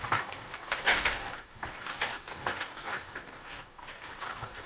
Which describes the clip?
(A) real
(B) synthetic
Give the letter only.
B